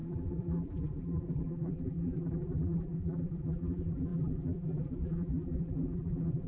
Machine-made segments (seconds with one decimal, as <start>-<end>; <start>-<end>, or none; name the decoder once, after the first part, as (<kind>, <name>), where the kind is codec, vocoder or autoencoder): 0.0-6.5 (vocoder, BigVGAN v2)

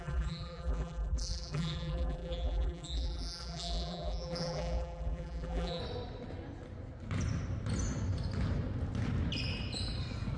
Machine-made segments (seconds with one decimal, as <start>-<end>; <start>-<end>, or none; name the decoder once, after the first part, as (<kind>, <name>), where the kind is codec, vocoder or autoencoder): 0.0-5.8 (vocoder, BigVGAN v2)

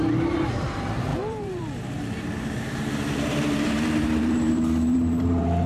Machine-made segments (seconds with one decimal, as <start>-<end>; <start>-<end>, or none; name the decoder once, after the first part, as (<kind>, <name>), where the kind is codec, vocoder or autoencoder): 0.0-5.7 (vocoder, BigVGAN v2)

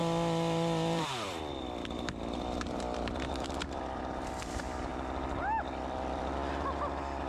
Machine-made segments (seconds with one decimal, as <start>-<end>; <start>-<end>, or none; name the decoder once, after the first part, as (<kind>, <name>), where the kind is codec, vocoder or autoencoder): 0.0-4.9 (vocoder, BigVGAN v2); 5.6-7.3

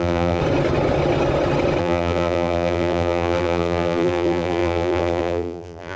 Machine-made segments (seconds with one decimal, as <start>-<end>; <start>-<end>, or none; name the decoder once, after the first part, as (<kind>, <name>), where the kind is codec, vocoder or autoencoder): 0.0-0.4 (vocoder, BigVGAN v2); 1.8-6.0

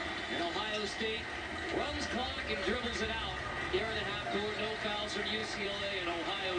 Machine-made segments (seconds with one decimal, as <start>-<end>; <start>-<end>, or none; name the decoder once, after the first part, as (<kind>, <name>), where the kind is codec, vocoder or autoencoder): 5.4-6.6 (vocoder, BigVGAN v2)